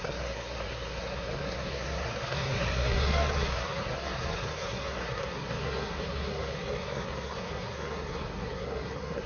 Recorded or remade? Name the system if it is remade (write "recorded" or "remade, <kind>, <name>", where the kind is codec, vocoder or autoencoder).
remade, codec, SNAC